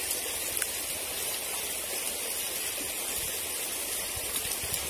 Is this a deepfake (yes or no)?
no